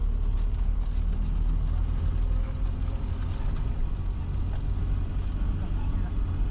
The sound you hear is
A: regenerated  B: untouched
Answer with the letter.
B